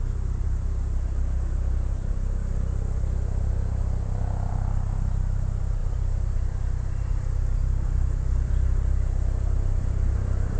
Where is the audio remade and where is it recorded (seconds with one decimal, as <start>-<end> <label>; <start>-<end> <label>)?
0.0-2.4 remade; 2.4-4.5 recorded; 4.5-10.6 remade

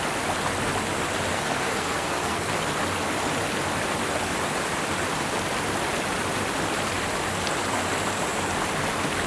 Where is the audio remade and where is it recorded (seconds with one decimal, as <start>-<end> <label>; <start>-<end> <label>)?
0.0-1.3 recorded; 1.3-2.5 remade; 2.5-9.3 recorded

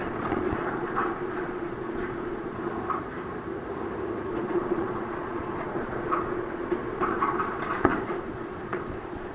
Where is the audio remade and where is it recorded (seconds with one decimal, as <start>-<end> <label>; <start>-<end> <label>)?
0.0-2.7 remade; 2.7-4.3 recorded; 4.3-9.3 remade

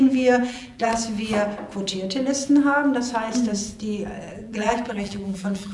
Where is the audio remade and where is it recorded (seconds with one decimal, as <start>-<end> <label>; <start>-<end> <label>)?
0.0-0.9 remade; 0.9-4.3 recorded; 4.3-5.7 remade